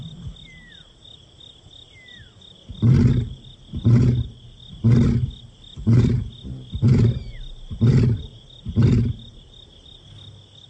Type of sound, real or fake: real